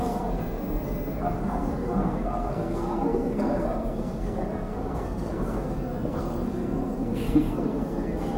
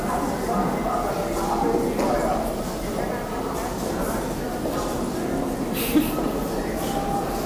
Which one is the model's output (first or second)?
first